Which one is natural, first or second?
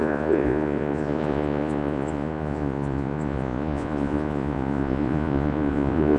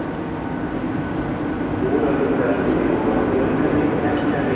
second